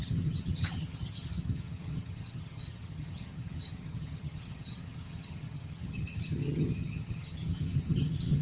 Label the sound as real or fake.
fake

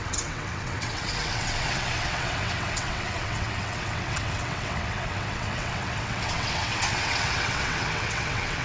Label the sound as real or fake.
fake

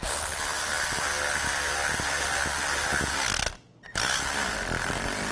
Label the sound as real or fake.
real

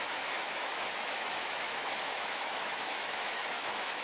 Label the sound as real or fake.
fake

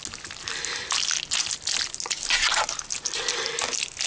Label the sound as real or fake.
real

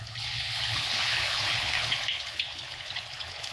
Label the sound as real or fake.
fake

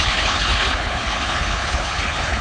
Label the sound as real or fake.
fake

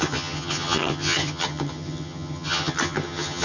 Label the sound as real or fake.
fake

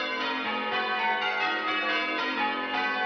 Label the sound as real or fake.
real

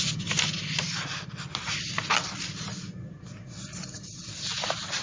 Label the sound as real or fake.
real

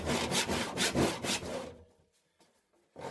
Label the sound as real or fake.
real